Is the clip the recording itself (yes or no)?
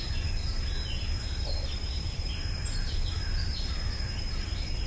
yes